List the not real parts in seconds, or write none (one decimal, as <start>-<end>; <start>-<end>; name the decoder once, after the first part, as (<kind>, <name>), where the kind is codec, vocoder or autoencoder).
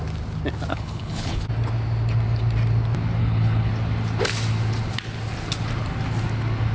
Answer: 0.7-1.4 (codec, HILCodec); 3.2-3.7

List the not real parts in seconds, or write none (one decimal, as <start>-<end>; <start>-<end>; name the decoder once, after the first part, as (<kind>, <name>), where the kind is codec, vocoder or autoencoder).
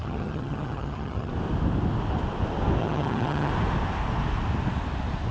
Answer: 0.0-1.3 (vocoder, HiFi-GAN); 2.8-3.5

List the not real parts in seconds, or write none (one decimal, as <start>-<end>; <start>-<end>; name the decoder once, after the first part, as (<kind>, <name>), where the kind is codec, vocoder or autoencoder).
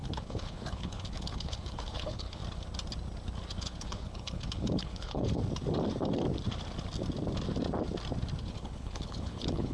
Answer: 0.0-2.4 (codec, HILCodec); 3.6-5.4; 8.4-9.7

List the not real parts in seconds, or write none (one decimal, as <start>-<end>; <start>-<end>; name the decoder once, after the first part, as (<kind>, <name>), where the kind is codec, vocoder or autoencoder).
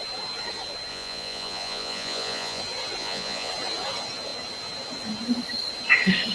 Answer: 0.9-2.6 (vocoder, Vocos); 3.0-3.5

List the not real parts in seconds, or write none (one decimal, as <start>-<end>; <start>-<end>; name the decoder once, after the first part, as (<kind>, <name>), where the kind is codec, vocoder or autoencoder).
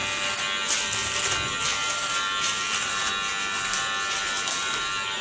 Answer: none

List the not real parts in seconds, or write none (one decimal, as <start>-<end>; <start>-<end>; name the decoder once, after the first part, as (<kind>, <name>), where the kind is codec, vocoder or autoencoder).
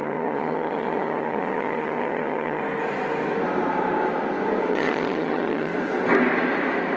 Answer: 0.0-2.6 (vocoder, HiFi-GAN); 4.7-5.7